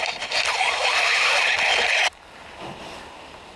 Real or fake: real